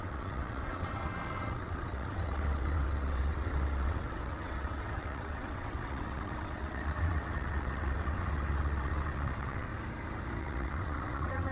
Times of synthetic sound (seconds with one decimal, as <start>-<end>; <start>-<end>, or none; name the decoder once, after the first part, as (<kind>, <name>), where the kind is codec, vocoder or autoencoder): 0.0-9.7 (vocoder, WaveNeXt); 10.4-11.5